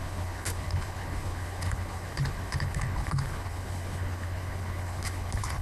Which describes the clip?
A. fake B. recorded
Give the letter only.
A